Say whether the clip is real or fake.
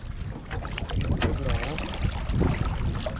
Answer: real